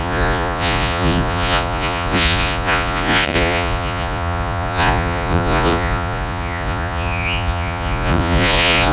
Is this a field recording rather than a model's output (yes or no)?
no